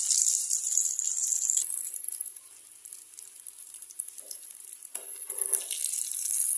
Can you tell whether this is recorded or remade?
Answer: recorded